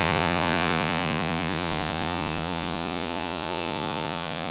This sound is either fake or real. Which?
fake